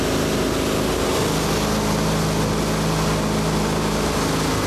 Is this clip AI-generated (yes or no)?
no